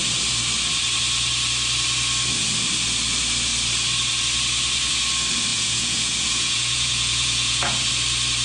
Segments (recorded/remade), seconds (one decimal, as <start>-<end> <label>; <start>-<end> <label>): 0.0-5.5 recorded; 5.5-7.9 remade; 7.9-8.4 recorded